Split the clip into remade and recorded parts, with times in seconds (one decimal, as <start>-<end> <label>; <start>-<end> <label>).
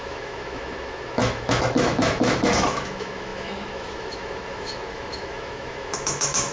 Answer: 0.0-6.5 remade